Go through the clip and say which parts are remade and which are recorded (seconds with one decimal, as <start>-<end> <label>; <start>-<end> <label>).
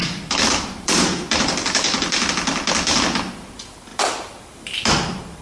0.0-2.3 remade; 2.3-3.9 recorded; 3.9-4.4 remade; 4.4-5.4 recorded